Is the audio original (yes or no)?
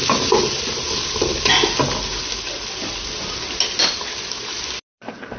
yes